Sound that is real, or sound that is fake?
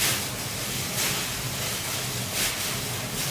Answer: fake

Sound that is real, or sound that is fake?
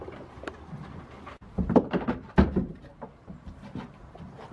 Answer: real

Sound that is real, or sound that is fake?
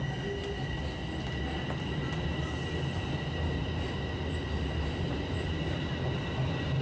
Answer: real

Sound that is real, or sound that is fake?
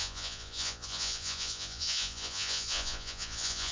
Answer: fake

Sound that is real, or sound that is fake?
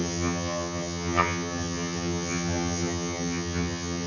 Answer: fake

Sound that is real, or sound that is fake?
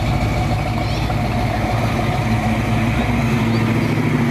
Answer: real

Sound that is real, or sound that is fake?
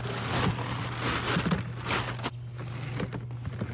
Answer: real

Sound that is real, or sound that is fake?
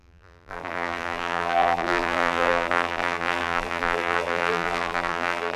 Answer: fake